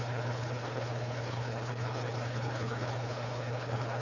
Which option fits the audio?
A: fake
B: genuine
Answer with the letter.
A